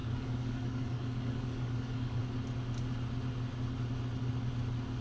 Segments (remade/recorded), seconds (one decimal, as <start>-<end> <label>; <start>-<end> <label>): 0.0-2.2 remade; 2.2-5.0 recorded